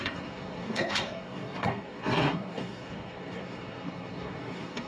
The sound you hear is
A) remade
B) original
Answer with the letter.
A